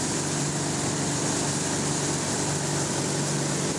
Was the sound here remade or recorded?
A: recorded